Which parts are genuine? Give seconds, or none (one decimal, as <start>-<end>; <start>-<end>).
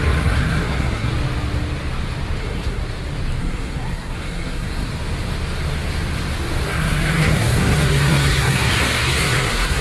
1.1-2.4; 2.8-3.4; 4.9-6.6